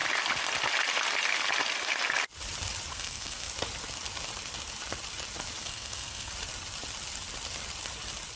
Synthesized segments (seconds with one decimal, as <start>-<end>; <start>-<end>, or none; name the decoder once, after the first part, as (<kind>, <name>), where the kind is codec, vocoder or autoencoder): 2.9-3.5 (codec, SNAC); 5.6-6.3